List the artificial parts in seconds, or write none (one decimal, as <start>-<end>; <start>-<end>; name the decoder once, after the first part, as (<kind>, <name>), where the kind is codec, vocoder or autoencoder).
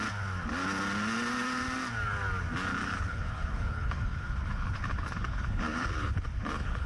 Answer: 2.8-6.9 (codec, HILCodec)